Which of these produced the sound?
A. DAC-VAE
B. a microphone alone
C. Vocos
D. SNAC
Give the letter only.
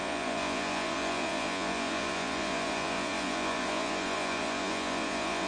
C